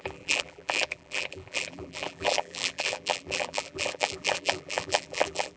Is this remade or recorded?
remade